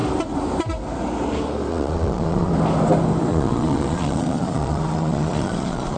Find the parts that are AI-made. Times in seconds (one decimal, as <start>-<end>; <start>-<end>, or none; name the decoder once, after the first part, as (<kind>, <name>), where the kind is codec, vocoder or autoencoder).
1.7-2.5 (vocoder, Vocos); 3.3-6.0